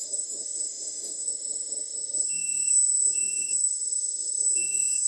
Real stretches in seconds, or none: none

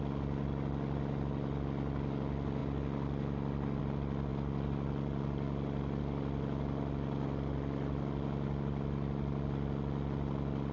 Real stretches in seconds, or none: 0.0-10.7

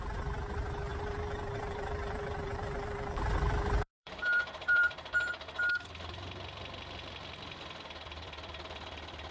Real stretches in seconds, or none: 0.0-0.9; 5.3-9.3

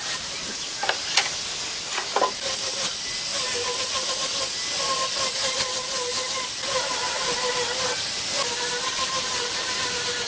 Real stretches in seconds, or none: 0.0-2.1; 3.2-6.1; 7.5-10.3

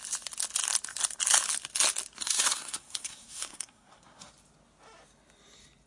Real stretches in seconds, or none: 0.0-2.2; 4.3-5.9

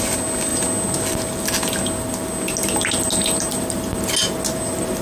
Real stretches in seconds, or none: 0.0-5.0

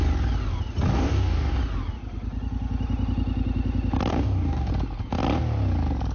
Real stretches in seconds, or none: 0.0-0.9; 1.6-4.1; 4.7-6.1